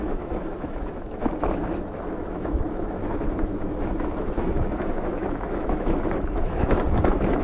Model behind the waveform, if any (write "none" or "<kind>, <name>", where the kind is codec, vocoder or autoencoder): autoencoder, DAC-VAE